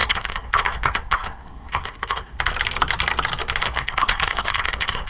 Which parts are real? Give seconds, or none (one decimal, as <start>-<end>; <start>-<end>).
2.4-3.6